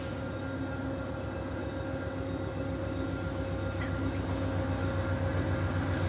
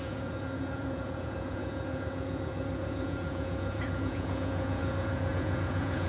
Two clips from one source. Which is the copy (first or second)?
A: second